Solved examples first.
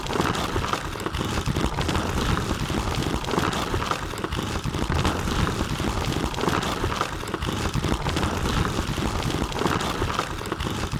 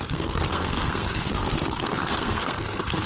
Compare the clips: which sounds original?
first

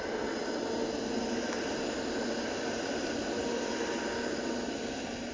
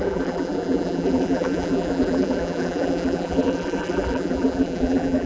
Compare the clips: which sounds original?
first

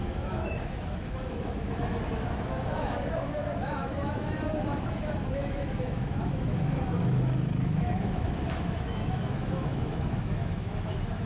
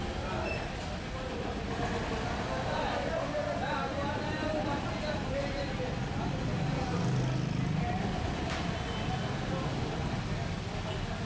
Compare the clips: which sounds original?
second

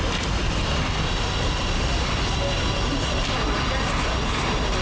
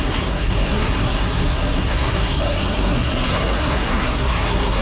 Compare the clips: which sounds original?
first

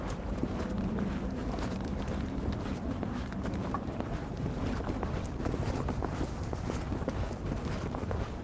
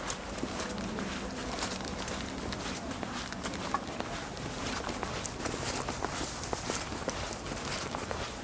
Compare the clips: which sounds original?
second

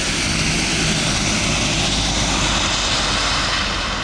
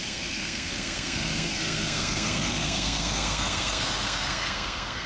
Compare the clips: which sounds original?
first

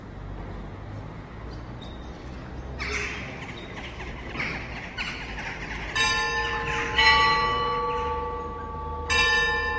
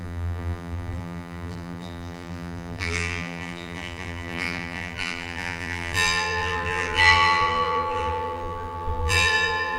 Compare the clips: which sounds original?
first